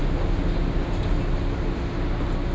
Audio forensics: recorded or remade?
recorded